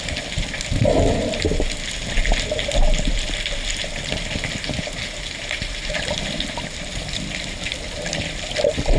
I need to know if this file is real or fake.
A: real